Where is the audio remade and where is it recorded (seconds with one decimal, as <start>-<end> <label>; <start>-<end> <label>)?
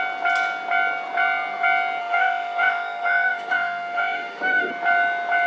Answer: 0.0-2.0 recorded; 2.0-4.7 remade; 4.7-5.5 recorded